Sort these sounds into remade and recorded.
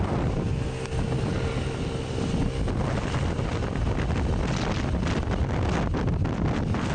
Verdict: recorded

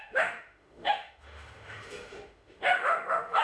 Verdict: remade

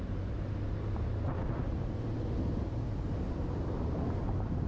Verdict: recorded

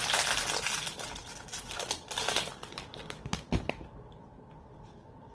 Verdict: recorded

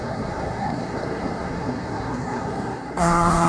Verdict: remade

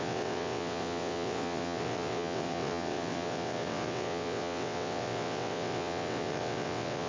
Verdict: remade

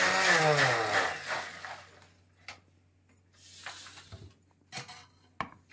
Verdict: recorded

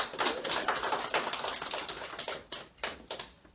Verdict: recorded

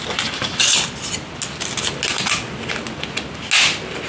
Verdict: recorded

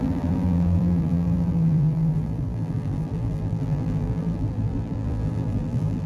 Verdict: remade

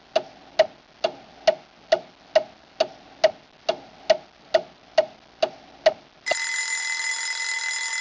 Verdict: recorded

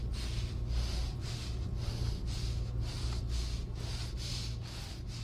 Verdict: recorded